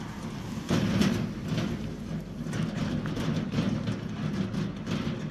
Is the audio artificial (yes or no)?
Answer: no